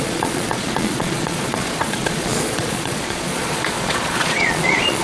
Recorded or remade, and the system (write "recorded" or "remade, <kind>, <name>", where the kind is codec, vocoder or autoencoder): remade, vocoder, Vocos